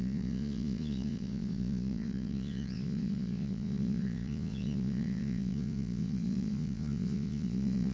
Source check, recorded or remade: remade